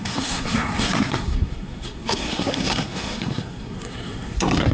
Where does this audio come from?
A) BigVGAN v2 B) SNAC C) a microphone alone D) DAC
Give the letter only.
B